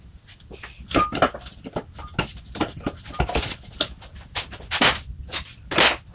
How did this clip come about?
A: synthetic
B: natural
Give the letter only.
B